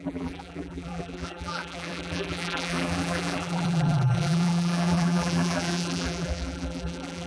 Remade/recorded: remade